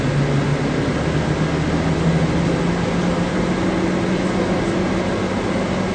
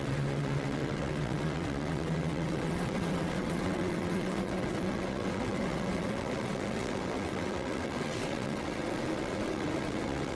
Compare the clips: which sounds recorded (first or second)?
first